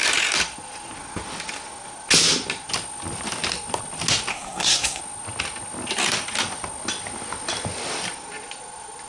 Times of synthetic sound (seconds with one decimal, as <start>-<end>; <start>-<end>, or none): 4.3-5.0